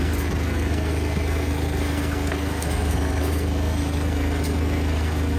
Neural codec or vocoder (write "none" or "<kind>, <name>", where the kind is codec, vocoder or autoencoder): codec, SNAC